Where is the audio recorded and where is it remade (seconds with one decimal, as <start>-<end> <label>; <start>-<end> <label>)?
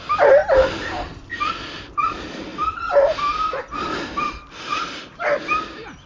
0.0-6.1 recorded